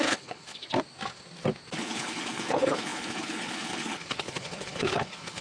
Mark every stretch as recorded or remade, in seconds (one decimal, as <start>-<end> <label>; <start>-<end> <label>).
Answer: 0.0-0.6 remade; 0.6-1.8 recorded; 1.8-5.4 remade